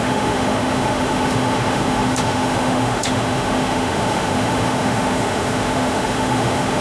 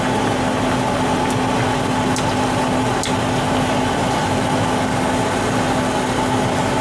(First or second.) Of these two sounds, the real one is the second